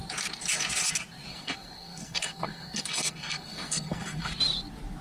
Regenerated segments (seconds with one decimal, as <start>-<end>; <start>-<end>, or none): 1.3-4.3